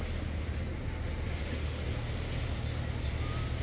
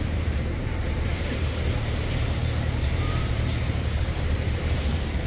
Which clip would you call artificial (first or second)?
second